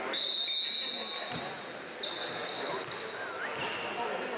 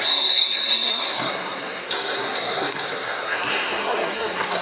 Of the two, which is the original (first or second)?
first